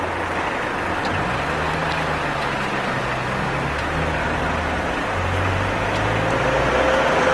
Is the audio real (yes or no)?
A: yes